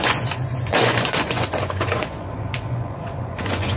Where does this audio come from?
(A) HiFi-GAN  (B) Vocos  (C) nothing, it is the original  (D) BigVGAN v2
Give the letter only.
B